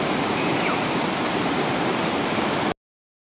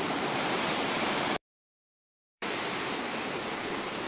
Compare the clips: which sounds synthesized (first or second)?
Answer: second